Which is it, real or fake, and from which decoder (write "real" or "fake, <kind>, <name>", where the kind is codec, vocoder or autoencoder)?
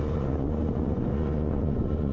fake, vocoder, Vocos